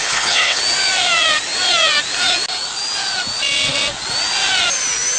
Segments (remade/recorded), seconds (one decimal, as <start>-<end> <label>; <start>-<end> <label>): 0.0-0.6 remade; 0.6-5.2 recorded